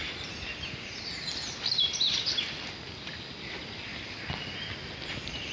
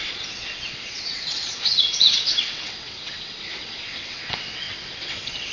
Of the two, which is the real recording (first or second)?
first